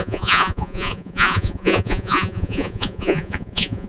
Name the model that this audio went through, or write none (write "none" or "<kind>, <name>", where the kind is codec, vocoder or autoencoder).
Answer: vocoder, Vocos